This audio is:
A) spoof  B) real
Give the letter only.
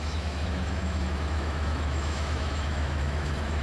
A